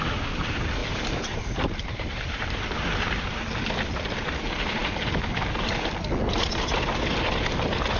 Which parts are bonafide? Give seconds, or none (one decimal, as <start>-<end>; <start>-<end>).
0.0-0.8; 3.4-8.0

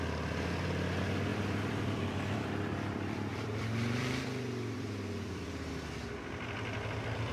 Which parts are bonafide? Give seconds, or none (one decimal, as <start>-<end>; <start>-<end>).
0.0-1.3; 5.7-7.3